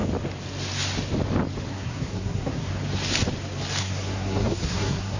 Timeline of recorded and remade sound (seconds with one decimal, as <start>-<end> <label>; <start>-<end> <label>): 0.0-1.7 recorded; 1.7-2.7 remade; 2.7-3.8 recorded; 3.8-5.2 remade